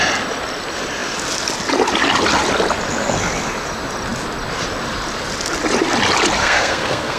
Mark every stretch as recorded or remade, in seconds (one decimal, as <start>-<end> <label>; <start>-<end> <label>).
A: 0.0-6.4 recorded; 6.4-7.2 remade